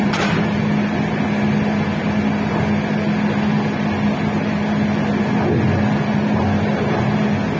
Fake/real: real